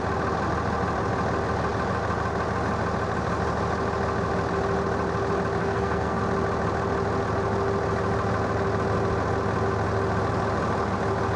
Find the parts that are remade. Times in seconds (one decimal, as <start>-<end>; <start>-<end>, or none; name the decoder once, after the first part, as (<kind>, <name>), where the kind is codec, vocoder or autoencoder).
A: 5.6-6.2 (codec, SNAC)